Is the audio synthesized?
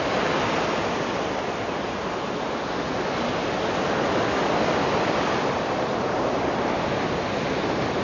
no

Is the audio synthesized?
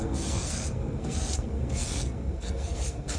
yes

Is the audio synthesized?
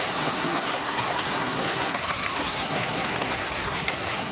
yes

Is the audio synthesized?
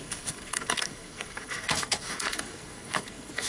yes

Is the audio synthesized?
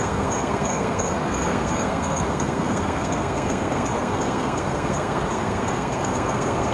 yes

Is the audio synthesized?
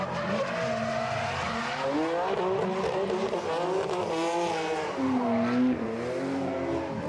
no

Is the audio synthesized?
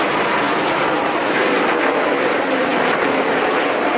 no